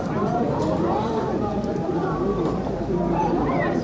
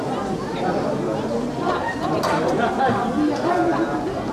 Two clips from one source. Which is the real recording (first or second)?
second